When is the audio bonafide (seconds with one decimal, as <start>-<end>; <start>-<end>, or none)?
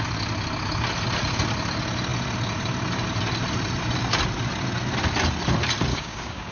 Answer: 0.0-5.9